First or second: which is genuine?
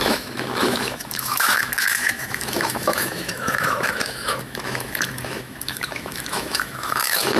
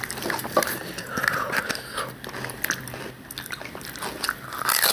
second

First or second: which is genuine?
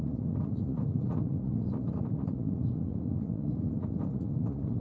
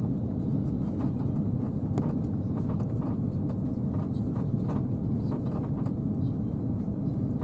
second